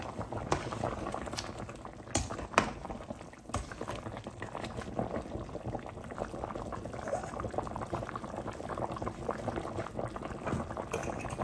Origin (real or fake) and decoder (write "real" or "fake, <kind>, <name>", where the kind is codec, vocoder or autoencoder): real